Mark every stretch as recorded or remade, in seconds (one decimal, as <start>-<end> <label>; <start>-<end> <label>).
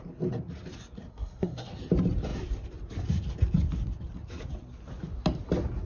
0.0-1.1 recorded; 1.1-1.7 remade; 1.7-5.9 recorded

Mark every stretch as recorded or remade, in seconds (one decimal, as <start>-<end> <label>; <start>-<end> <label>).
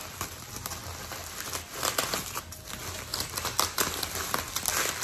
0.0-5.0 recorded